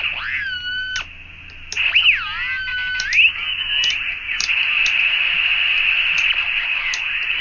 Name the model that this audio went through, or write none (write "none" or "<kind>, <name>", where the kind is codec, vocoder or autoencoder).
none